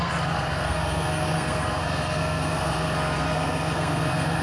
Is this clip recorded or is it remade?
remade